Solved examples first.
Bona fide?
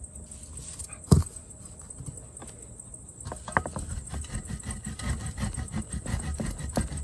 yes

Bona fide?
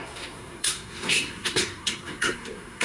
no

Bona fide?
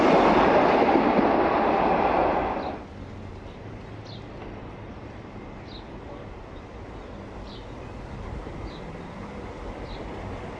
yes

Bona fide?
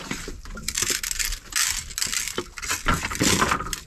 yes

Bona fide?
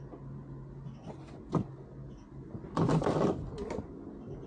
yes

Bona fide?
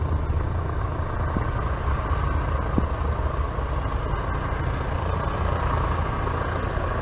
yes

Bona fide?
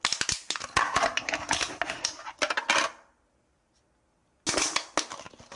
yes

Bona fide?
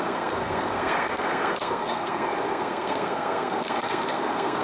no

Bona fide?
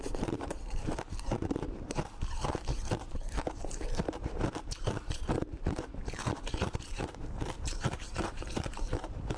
no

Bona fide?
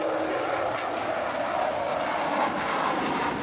yes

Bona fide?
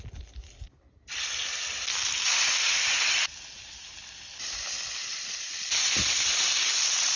yes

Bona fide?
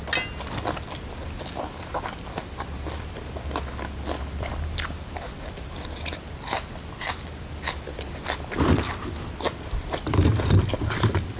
yes